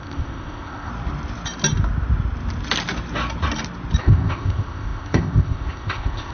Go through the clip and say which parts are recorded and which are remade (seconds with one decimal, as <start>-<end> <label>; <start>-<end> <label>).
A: 0.0-0.9 remade; 0.9-4.0 recorded; 4.0-6.3 remade